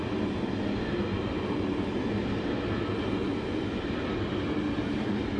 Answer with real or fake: real